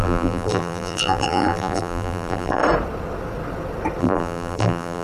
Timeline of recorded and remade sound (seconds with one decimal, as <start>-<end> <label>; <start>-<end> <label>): 0.0-2.6 remade; 2.6-4.0 recorded; 4.0-5.0 remade